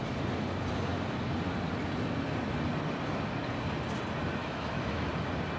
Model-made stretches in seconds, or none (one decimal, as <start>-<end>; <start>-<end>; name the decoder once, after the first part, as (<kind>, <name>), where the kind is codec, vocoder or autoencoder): 4.4-5.1 (autoencoder, DAC-VAE)